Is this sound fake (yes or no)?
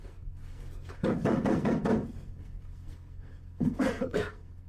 yes